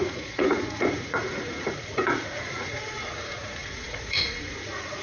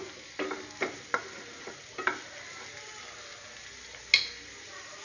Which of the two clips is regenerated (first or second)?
first